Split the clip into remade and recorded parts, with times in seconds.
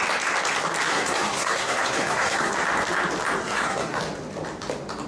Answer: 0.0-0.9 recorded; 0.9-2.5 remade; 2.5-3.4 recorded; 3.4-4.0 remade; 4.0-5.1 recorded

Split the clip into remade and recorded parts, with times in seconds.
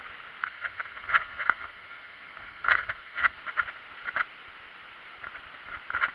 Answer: 0.0-0.4 recorded; 0.4-3.4 remade; 3.4-6.1 recorded